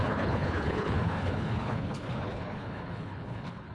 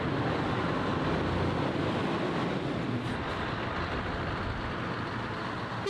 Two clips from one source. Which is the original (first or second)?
second